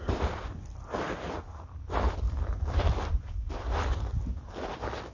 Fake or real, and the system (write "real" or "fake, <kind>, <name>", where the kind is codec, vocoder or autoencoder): real